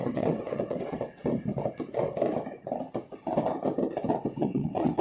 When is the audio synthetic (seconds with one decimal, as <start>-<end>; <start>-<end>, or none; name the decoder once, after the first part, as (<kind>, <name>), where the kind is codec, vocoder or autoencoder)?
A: 0.0-1.2 (vocoder, WaveNeXt); 4.2-5.0